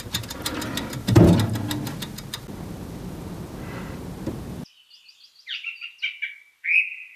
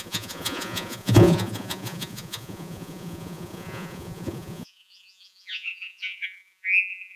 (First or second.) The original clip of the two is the first